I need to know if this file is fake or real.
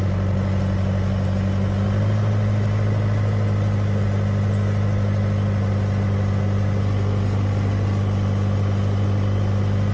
real